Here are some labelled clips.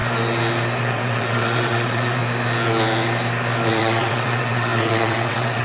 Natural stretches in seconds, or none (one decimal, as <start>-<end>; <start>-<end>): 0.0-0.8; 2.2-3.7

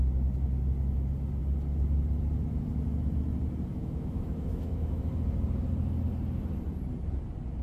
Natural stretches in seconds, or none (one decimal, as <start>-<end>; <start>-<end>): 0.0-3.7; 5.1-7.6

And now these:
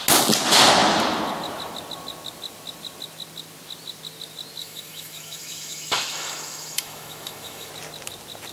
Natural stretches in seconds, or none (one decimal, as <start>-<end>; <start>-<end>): 0.0-4.6; 7.7-8.5

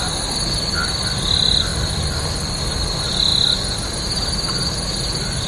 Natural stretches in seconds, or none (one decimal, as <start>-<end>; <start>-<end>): 0.0-1.7; 2.6-5.5

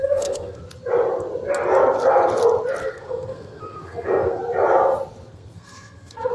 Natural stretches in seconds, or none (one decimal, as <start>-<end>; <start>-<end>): 0.6-2.8; 4.4-5.3

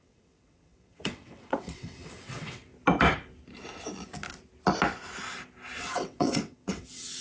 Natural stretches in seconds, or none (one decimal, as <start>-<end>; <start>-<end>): 2.7-5.8